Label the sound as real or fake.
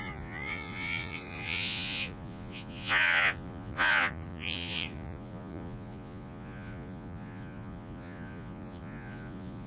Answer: fake